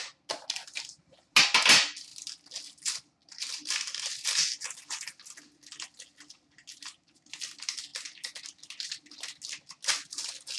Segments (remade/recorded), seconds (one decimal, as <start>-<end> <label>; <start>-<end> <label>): 0.0-3.2 recorded; 3.2-4.1 remade; 4.1-6.7 recorded; 6.7-7.4 remade; 7.4-10.6 recorded

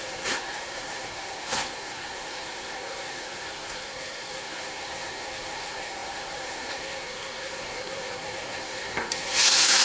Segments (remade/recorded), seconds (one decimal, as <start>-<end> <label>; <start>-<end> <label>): 0.0-9.8 remade

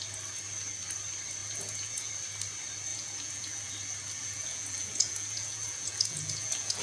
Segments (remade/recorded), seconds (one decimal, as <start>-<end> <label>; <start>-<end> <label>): 0.0-1.4 recorded; 1.4-2.1 remade; 2.1-2.9 recorded; 2.9-3.7 remade; 3.7-4.2 recorded; 4.2-6.8 remade

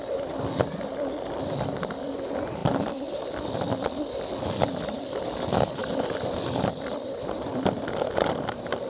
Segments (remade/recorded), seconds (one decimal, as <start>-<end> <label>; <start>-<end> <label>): 0.0-8.9 recorded